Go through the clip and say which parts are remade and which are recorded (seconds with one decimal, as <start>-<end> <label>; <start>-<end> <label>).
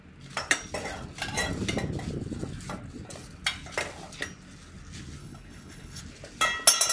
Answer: 0.0-5.2 recorded; 5.2-6.0 remade; 6.0-6.9 recorded